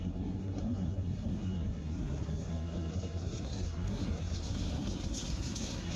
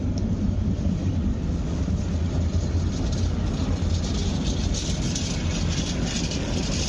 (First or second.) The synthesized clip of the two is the first